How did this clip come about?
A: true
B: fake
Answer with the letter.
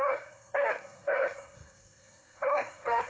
B